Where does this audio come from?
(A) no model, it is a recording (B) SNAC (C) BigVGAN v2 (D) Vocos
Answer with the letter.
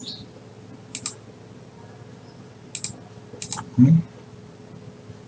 A